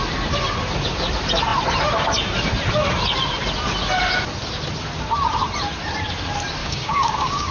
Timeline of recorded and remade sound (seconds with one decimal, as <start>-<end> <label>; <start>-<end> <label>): 0.0-6.6 recorded; 6.6-7.5 remade